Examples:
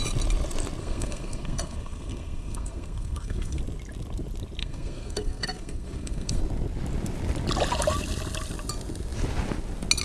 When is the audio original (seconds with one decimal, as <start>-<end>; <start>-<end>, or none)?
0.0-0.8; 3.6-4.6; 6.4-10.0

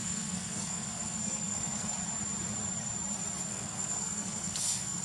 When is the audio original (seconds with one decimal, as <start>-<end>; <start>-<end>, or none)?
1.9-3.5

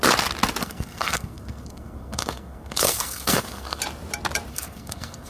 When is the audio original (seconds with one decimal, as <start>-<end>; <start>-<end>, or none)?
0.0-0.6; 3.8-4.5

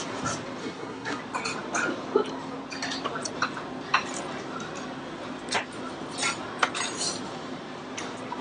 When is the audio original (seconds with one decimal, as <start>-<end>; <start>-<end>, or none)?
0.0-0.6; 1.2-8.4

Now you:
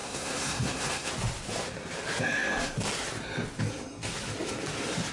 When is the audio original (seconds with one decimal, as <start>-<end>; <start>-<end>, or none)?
1.1-5.1